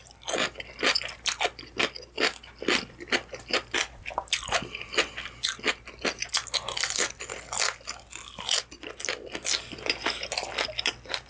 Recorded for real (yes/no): yes